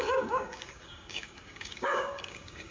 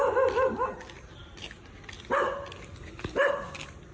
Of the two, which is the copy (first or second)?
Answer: first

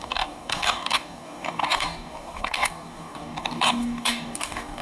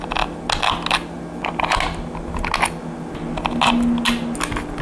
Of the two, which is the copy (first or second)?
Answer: first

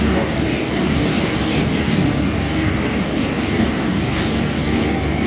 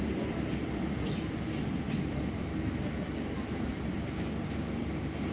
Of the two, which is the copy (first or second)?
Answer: first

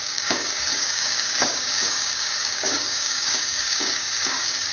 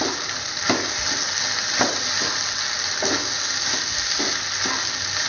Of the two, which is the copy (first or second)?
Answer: first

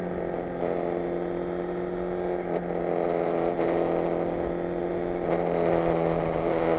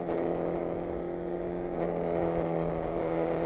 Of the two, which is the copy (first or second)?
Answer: second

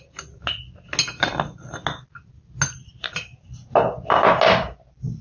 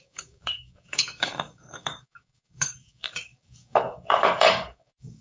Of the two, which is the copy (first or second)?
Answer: second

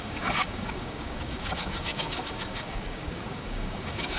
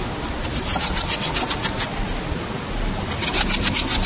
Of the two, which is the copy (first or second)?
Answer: first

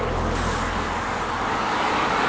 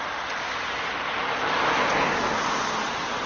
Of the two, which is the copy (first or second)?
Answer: first